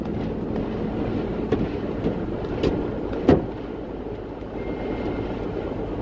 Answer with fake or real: real